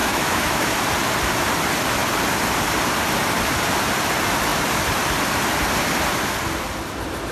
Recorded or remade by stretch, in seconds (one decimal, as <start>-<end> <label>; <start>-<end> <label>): 0.0-0.7 remade; 0.7-7.3 recorded